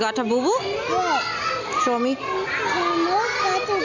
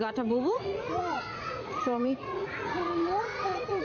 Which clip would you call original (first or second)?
first